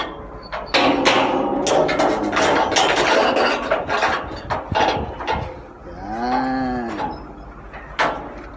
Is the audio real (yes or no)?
yes